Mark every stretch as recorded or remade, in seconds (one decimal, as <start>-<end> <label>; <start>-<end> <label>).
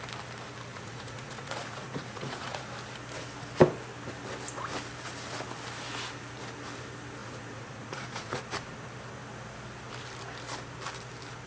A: 0.0-0.7 recorded; 0.7-2.6 remade; 2.6-7.2 recorded; 7.2-8.4 remade; 8.4-11.5 recorded